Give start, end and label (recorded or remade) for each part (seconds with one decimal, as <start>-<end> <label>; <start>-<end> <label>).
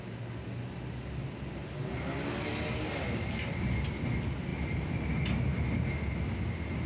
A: 0.0-6.9 recorded